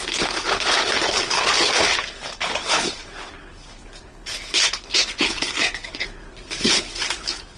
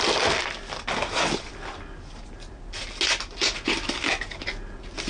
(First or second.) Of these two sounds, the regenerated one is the first